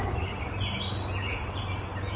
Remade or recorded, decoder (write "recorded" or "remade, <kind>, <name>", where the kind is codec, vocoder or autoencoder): recorded